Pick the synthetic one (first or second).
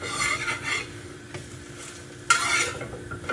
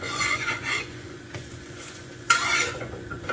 second